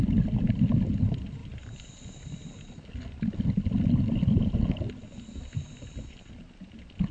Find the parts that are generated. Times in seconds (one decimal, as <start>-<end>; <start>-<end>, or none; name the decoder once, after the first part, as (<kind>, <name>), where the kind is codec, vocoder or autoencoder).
none

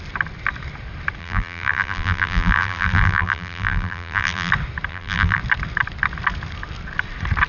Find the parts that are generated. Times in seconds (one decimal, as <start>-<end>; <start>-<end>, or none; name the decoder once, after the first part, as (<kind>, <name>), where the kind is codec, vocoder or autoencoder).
1.2-4.5 (vocoder, BigVGAN v2); 4.9-5.4

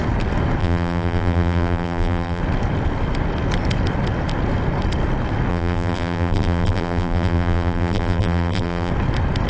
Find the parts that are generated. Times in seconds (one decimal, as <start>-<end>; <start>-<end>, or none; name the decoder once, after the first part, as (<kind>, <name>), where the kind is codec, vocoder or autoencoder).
0.6-2.4 (vocoder, BigVGAN v2); 5.5-8.9

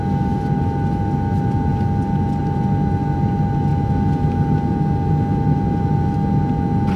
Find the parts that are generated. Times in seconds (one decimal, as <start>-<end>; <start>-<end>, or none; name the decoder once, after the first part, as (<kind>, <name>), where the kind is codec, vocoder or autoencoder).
none